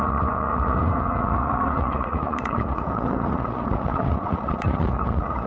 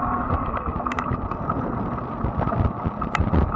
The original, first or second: second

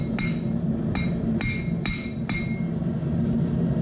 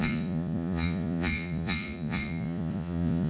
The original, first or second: first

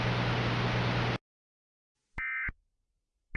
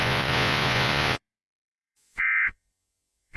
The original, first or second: first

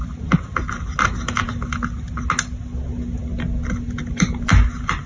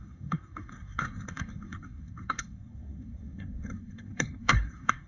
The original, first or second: first